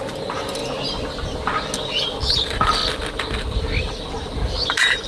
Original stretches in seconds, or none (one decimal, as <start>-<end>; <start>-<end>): 0.6-2.3; 2.8-3.8